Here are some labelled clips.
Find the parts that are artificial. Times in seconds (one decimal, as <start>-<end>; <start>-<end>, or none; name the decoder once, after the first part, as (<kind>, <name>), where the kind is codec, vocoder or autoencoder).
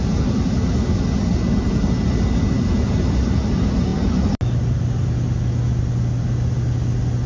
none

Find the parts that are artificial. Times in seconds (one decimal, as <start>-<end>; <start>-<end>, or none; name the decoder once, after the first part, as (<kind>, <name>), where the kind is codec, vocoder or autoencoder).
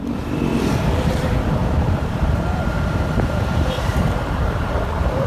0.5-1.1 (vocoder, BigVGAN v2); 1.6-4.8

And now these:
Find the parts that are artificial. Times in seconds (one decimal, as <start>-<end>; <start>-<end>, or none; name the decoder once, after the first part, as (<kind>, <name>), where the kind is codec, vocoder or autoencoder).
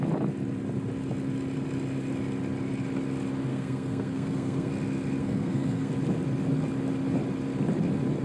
3.5-4.7 (codec, SNAC); 5.2-5.9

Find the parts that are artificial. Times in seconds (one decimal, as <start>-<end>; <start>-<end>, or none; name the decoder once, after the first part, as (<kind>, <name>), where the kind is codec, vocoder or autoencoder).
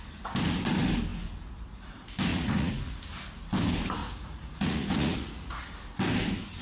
2.3-3.0 (vocoder, Vocos); 4.0-5.6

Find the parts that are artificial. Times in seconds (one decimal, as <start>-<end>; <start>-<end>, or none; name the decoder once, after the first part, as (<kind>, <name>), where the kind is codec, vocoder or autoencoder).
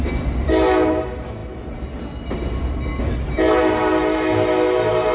none